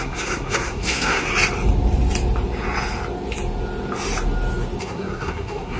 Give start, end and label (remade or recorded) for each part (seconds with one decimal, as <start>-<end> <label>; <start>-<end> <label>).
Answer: 0.0-1.3 remade; 1.3-4.8 recorded; 4.8-5.8 remade